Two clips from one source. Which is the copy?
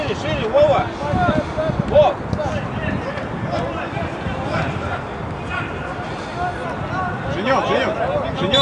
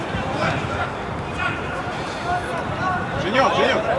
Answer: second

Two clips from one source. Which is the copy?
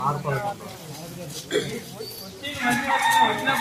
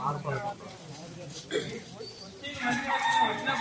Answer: second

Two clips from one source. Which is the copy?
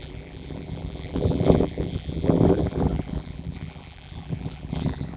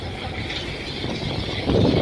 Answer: first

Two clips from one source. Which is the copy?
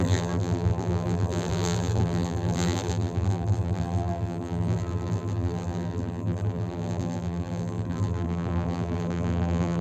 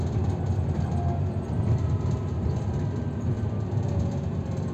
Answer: first